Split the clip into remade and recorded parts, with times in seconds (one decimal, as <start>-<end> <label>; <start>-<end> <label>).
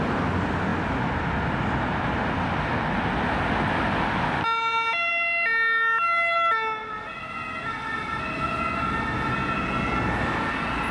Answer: 0.0-10.9 recorded